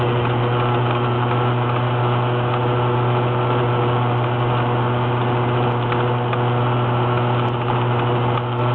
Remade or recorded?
recorded